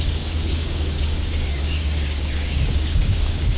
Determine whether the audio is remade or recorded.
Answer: remade